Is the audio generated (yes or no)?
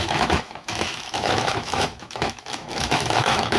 yes